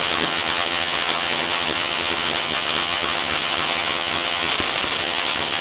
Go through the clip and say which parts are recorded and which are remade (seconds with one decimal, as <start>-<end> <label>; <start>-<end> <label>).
0.0-4.5 remade; 4.5-5.0 recorded; 5.0-5.6 remade